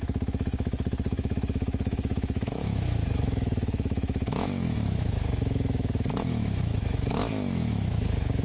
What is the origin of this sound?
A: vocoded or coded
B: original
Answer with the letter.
A